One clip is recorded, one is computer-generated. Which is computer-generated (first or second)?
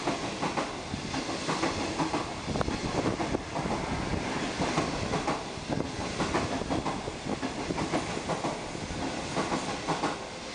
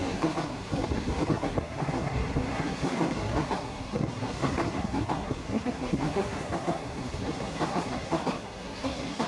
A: second